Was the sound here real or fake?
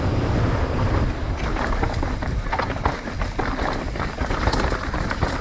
real